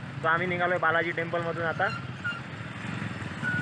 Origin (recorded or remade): recorded